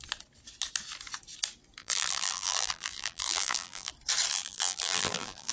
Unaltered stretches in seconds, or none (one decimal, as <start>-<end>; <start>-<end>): 0.0-1.8; 3.9-4.3